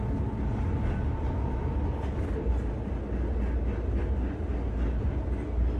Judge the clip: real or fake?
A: real